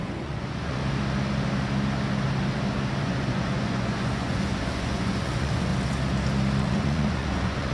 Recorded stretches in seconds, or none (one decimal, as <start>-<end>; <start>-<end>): 0.8-3.0; 5.7-6.6